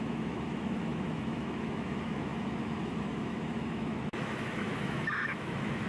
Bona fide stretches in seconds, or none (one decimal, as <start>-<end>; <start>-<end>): none